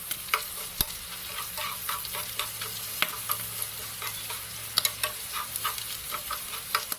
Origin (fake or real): real